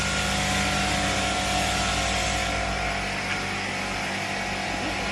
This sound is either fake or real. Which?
real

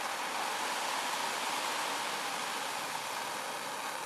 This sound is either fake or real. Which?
real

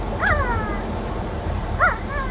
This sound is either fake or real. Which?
fake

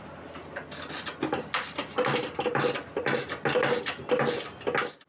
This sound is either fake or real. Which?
real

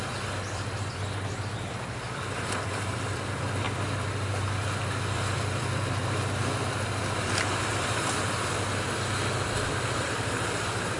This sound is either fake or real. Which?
fake